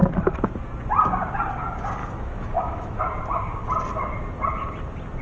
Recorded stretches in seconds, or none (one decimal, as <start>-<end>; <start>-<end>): 0.0-2.0; 3.0-5.2

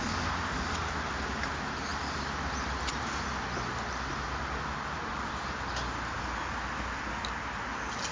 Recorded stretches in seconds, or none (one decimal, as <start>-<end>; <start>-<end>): 0.0-8.1

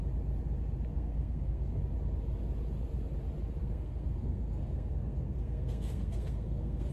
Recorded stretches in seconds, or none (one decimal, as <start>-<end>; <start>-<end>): 0.0-0.9; 1.6-3.6

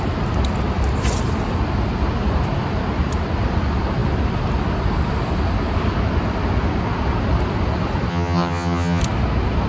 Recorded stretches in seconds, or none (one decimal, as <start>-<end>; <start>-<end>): 0.0-8.1; 9.0-9.7

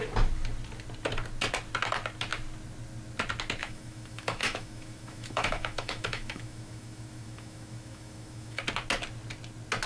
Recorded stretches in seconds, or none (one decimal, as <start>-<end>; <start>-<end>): 0.0-3.6; 8.6-9.9

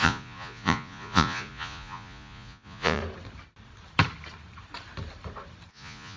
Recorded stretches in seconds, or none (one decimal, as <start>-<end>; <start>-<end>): 3.0-5.7